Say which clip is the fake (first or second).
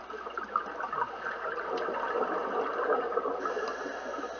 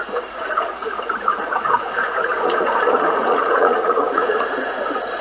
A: second